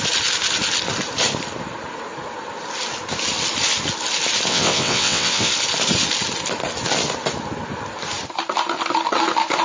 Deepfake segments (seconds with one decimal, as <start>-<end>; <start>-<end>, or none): 4.5-5.5